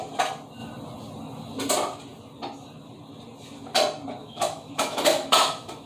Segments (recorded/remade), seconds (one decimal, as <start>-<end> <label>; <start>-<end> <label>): 0.0-4.2 recorded; 4.2-5.9 remade